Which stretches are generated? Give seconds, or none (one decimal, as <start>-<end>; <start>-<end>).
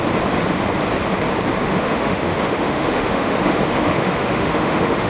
1.6-5.1